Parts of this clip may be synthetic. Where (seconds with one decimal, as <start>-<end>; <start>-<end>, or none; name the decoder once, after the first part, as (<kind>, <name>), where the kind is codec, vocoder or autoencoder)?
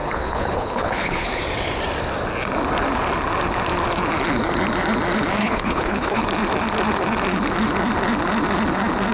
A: 0.0-1.4 (codec, HILCodec); 5.4-6.2